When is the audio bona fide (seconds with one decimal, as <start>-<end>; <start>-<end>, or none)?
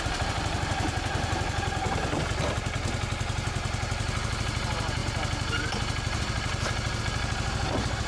0.0-8.1